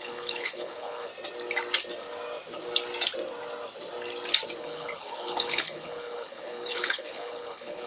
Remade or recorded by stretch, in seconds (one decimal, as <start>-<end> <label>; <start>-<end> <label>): 0.0-1.1 remade; 1.1-4.6 recorded; 4.6-7.9 remade